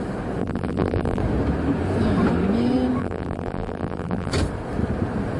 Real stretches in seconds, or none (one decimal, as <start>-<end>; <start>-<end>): 0.0-0.4; 1.2-3.0; 4.3-5.4